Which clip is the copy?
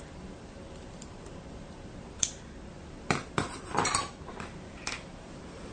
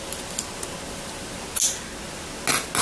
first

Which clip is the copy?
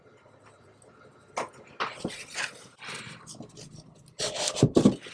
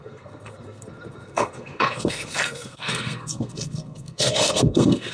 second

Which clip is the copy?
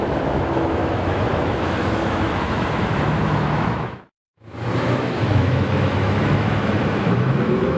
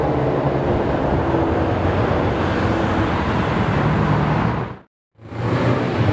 first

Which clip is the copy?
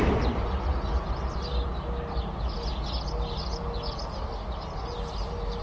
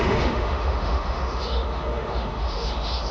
second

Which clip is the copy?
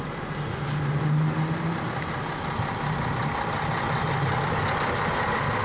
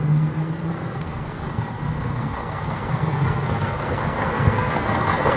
second